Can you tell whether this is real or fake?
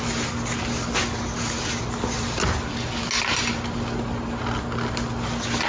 real